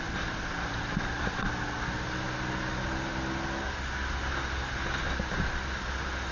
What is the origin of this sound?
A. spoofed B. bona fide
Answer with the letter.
B